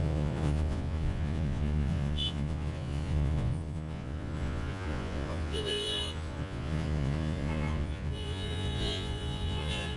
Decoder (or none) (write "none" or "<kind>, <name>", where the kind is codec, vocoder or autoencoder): vocoder, Vocos